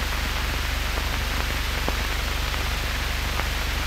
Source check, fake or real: real